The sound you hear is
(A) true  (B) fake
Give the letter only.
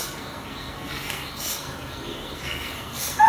B